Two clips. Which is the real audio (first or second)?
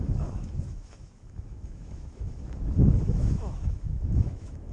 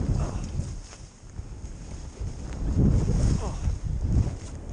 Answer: second